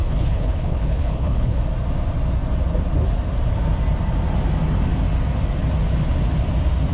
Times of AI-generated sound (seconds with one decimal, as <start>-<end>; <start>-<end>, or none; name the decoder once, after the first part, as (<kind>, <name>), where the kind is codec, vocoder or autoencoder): 0.0-1.6 (codec, HILCodec)